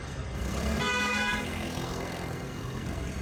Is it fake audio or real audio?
fake